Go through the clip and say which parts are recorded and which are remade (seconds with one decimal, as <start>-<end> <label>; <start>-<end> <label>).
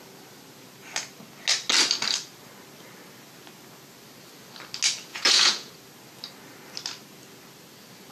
0.0-5.1 recorded; 5.1-5.7 remade; 5.7-8.1 recorded